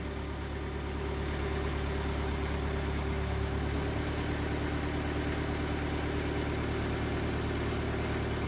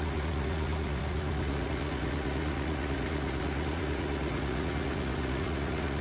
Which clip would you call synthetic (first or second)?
second